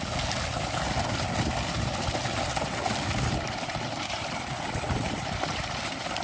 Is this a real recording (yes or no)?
yes